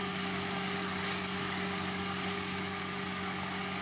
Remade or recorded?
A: remade